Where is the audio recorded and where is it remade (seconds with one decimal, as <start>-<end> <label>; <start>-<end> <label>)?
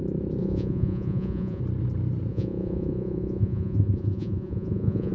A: 0.0-0.4 recorded; 0.4-1.6 remade; 1.6-2.3 recorded; 2.3-5.1 remade